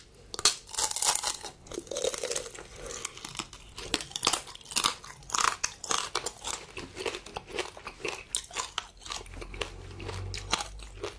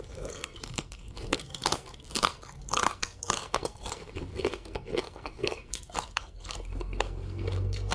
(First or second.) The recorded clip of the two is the first